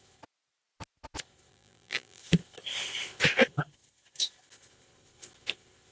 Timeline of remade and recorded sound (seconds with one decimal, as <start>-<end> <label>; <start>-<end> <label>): 0.0-1.5 recorded; 1.5-2.2 remade; 2.2-5.9 recorded